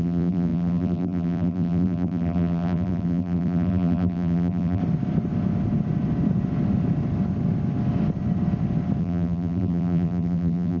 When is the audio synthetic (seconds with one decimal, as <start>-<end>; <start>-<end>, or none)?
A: 0.0-4.8; 9.0-10.8